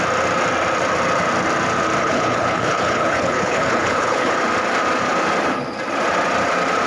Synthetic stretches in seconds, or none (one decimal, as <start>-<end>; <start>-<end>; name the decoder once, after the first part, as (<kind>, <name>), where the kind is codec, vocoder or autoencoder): 2.0-4.3 (codec, HILCodec)